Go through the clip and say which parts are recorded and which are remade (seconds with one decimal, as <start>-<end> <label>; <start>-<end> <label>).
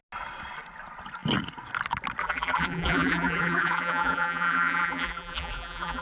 0.0-2.2 recorded; 2.2-6.0 remade